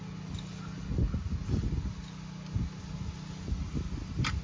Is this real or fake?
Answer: real